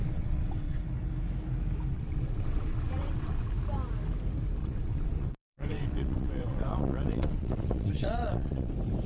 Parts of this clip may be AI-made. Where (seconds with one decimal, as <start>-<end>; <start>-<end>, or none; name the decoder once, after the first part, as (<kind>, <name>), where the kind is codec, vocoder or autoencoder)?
0.0-0.8 (vocoder, WaveNeXt); 1.9-3.5; 4.6-8.7

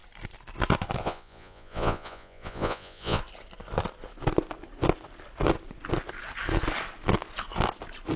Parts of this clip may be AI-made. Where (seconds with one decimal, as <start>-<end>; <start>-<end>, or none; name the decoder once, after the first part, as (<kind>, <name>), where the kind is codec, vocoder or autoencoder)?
1.0-3.2 (vocoder, Vocos)

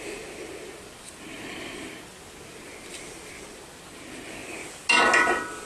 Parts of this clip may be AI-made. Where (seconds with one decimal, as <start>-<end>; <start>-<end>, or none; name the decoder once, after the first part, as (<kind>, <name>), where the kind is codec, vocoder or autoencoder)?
none

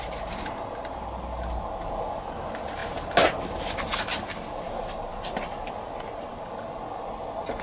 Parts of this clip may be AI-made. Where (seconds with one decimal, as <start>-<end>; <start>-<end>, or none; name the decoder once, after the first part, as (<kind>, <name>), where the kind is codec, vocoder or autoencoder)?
none